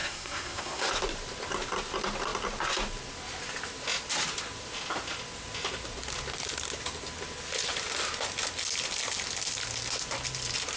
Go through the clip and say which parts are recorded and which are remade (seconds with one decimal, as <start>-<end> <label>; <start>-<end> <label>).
0.0-0.9 remade; 0.9-10.8 recorded